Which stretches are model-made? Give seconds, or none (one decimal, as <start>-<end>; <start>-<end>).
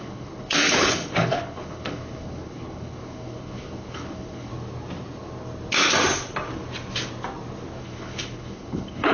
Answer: 0.0-4.5; 7.8-9.1